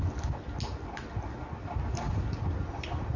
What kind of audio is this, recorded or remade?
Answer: recorded